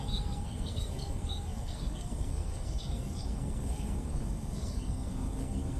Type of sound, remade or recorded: remade